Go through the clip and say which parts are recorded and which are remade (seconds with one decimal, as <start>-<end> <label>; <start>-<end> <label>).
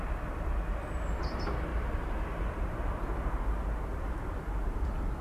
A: 0.0-5.2 recorded